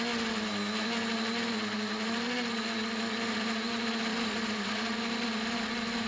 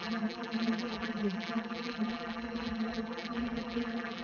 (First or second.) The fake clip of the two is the second